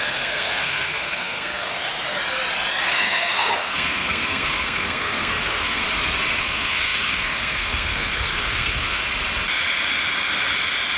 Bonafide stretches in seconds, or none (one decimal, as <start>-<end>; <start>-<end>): 1.9-2.8; 5.8-6.4; 9.0-11.0